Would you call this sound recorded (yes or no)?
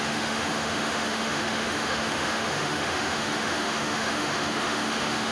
no